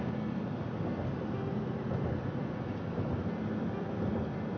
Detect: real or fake fake